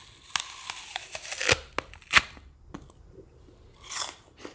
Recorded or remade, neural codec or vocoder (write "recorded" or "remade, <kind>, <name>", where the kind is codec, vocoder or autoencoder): recorded